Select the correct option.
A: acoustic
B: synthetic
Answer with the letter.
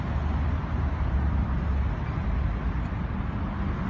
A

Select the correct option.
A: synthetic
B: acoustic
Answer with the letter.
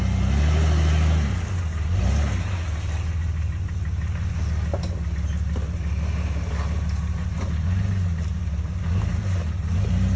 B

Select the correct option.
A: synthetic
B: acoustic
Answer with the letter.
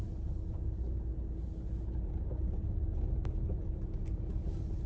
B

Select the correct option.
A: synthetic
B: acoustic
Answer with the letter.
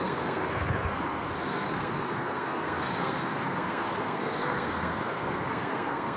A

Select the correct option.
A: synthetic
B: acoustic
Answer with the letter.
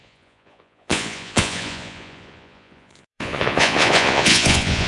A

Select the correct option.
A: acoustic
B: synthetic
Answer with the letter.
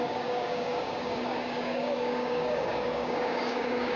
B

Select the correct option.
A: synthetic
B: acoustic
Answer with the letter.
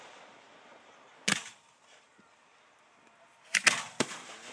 B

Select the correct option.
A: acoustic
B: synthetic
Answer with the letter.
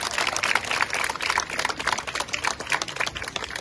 A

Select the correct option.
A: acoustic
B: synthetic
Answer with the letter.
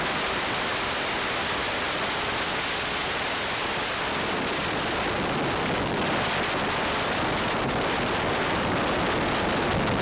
A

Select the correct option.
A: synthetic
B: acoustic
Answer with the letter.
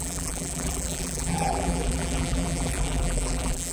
A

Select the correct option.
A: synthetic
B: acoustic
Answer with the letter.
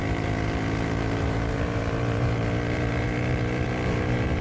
A